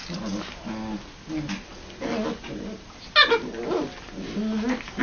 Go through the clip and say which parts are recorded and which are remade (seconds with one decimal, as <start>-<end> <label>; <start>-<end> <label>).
0.0-5.0 recorded